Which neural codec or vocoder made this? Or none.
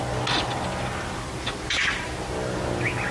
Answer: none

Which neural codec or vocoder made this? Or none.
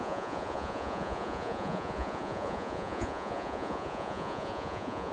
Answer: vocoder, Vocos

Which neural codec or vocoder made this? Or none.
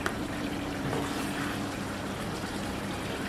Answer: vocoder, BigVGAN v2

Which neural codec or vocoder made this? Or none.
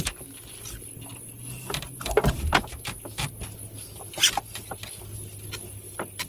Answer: none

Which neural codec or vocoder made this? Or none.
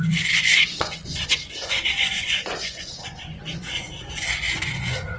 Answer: vocoder, Vocos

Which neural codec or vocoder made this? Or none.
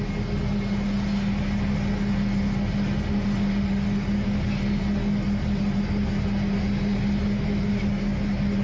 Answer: none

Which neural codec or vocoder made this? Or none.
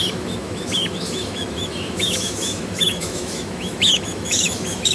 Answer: autoencoder, DAC-VAE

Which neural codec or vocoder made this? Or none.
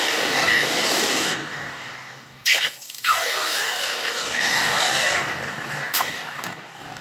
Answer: codec, DAC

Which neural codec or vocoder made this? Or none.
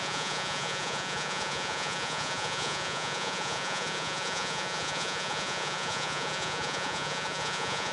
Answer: vocoder, Vocos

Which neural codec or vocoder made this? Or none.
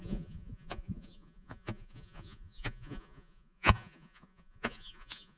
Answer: vocoder, Vocos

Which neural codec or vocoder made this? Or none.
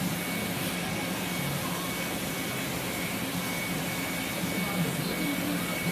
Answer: none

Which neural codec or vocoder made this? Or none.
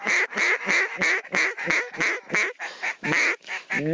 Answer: autoencoder, DAC-VAE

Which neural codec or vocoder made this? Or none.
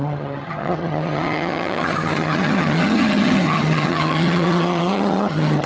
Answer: vocoder, HiFi-GAN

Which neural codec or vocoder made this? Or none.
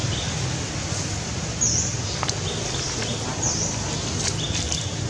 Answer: none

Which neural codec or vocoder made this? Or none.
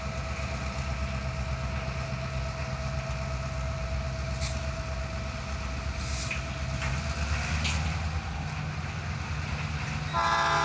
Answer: none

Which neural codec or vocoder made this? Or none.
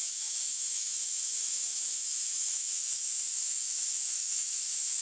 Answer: autoencoder, DAC-VAE